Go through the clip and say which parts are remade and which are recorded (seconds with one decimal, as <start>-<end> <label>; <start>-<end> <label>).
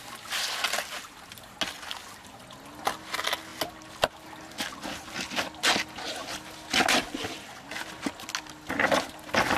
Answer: 0.0-9.6 recorded